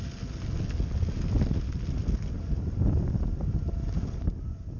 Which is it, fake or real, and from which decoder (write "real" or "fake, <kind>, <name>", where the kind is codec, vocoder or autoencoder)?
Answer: real